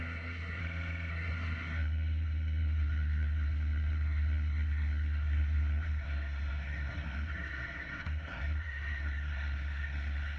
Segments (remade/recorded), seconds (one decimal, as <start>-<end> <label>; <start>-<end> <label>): 0.0-0.6 remade; 0.6-1.1 recorded; 1.1-10.4 remade